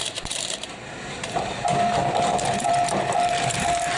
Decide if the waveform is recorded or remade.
remade